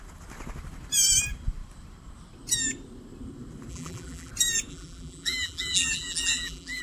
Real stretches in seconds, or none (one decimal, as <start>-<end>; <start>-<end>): 0.0-3.7; 4.3-4.7